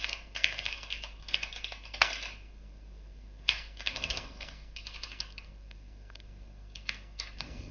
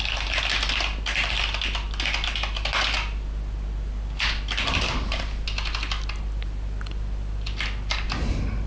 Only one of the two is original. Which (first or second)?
second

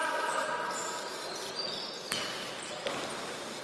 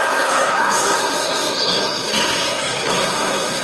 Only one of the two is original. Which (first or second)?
first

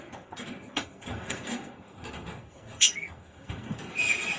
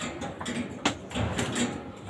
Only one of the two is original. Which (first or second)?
second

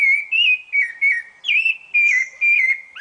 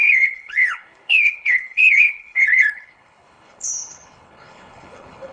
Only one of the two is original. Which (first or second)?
first